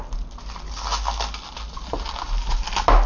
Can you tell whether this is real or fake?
real